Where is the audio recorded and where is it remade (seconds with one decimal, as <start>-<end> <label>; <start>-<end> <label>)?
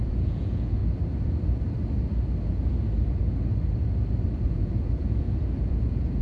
0.0-0.8 remade; 0.8-4.5 recorded; 4.5-6.2 remade